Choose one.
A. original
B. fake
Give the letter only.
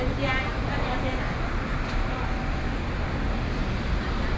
A